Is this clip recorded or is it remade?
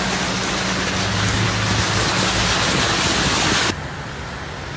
recorded